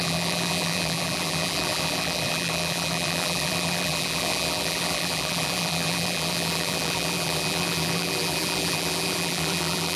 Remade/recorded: remade